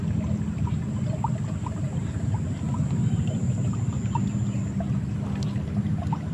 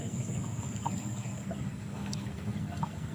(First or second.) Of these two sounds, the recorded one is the first